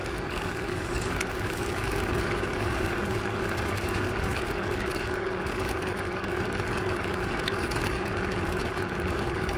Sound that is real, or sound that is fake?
fake